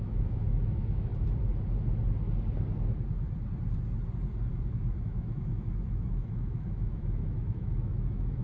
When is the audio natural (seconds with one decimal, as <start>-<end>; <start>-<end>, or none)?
1.1-4.5